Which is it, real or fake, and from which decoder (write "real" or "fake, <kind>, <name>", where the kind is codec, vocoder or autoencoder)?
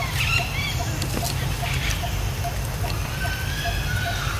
real